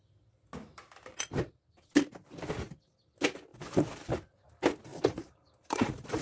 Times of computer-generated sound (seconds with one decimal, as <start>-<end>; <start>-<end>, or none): 3.5-4.1; 4.9-6.2